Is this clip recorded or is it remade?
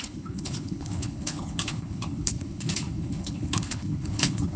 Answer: remade